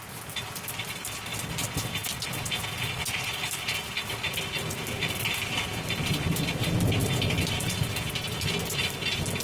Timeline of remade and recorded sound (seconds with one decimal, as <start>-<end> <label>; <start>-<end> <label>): 0.0-9.4 recorded